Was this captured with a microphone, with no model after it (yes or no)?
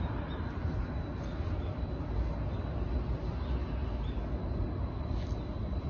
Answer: yes